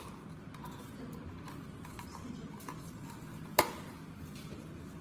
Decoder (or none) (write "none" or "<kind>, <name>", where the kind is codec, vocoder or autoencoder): none